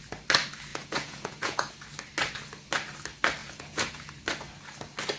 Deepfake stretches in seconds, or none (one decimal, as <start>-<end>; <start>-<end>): 0.7-1.7; 3.4-4.1